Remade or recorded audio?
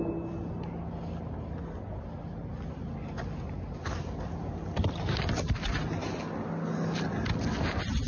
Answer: recorded